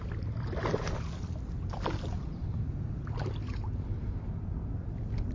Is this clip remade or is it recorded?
recorded